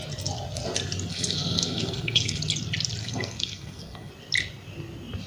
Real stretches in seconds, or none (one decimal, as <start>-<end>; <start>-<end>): 0.0-1.1; 2.4-3.0; 4.1-5.3

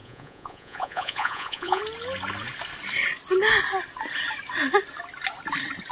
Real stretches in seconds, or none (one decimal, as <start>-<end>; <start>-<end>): 1.8-5.9